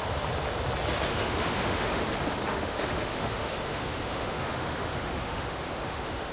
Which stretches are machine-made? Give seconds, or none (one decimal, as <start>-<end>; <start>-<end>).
1.1-2.0; 2.5-6.3